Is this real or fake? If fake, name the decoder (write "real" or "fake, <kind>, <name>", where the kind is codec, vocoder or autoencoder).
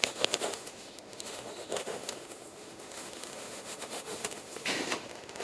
fake, autoencoder, DAC-VAE